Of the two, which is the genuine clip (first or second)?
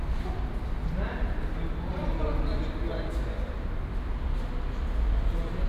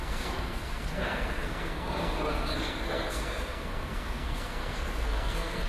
first